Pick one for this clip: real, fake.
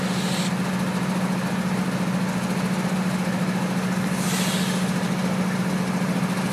real